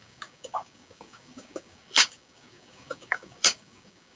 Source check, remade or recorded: remade